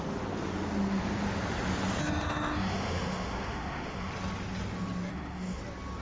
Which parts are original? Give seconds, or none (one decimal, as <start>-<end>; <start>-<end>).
0.0-2.0; 4.1-5.1; 5.6-6.0

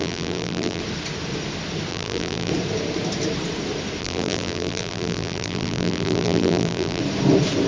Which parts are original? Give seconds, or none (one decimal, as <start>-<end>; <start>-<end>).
0.8-1.9; 2.5-4.0; 7.0-7.7

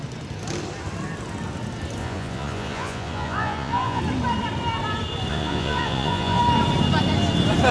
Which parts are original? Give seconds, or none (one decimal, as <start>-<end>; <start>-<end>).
0.0-2.0; 4.0-5.3; 6.4-7.7

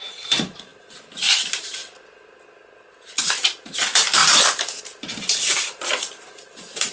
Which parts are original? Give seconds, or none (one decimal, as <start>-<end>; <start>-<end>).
1.8-3.2; 4.2-4.8